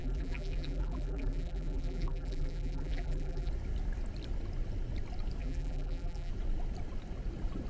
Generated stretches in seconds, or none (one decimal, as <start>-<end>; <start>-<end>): 0.0-3.5; 5.4-6.3